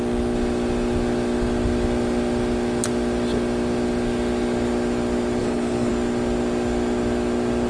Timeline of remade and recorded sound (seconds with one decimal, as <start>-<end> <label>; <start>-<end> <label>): 0.0-5.4 recorded; 5.4-5.9 remade; 5.9-7.7 recorded